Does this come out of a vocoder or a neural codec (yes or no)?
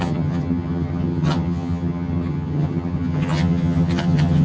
yes